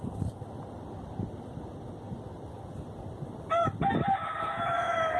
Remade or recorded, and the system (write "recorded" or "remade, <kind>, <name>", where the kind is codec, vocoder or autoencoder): recorded